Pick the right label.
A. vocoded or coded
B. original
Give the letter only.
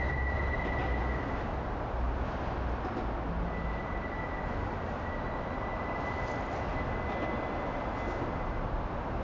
B